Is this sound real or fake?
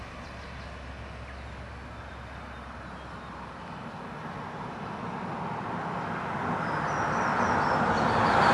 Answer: real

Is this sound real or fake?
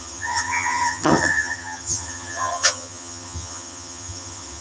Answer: fake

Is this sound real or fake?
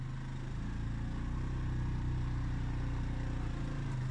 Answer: real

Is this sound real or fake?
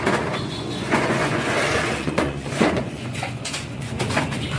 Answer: fake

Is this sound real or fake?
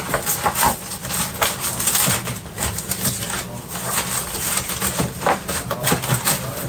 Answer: real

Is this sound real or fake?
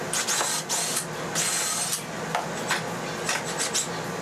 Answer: real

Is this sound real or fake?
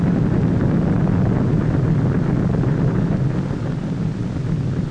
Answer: real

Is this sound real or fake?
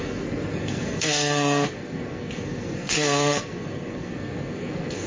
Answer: fake